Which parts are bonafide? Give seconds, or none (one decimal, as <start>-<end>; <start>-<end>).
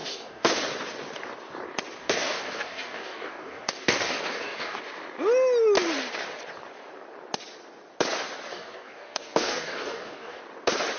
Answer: 0.6-2.0; 4.8-8.5; 10.4-11.0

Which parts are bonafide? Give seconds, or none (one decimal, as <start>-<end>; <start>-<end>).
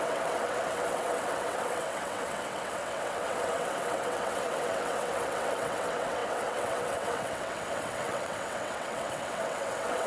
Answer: none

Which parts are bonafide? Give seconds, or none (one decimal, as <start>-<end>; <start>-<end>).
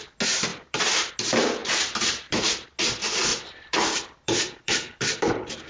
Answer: 0.0-0.5; 1.1-1.6; 2.5-3.3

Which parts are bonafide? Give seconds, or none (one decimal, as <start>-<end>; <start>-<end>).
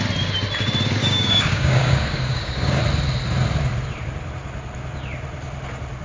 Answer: 0.0-1.0; 2.8-6.0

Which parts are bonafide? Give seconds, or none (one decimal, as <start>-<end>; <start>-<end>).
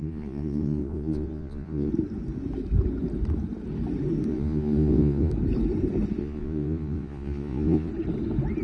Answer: 1.9-4.3; 5.3-6.2; 7.9-8.6